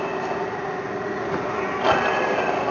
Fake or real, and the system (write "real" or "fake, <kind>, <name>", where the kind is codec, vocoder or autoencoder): real